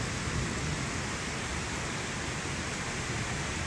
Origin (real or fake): real